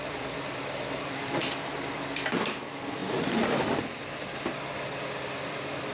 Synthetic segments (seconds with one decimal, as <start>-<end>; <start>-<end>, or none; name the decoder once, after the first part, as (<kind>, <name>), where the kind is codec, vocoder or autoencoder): 0.0-3.0 (vocoder, BigVGAN v2); 3.5-5.9